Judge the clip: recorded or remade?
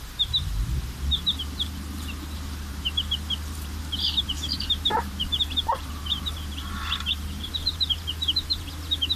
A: remade